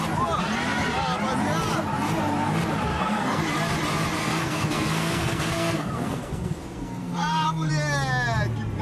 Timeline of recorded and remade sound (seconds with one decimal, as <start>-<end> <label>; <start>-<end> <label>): 0.0-2.9 recorded; 2.9-3.4 remade; 3.4-4.2 recorded; 4.2-7.7 remade; 7.7-8.8 recorded